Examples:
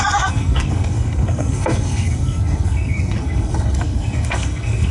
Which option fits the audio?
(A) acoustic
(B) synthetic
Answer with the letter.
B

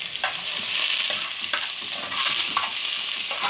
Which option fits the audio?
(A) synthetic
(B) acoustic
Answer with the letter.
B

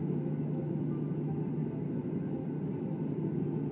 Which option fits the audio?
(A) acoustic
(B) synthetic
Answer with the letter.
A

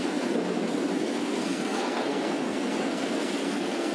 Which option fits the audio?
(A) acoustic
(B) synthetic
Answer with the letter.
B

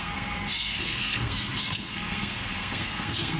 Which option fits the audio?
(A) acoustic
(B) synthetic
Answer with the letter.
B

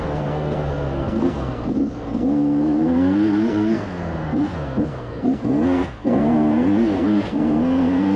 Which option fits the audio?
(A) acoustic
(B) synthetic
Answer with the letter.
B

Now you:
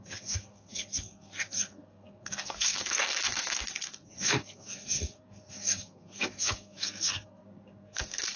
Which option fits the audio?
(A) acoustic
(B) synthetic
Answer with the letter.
B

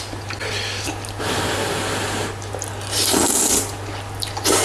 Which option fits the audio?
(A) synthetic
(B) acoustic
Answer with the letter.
B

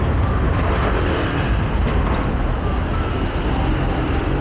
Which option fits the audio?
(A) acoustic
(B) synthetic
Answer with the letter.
A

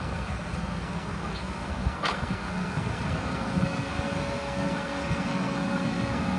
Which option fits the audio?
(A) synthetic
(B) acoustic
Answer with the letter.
A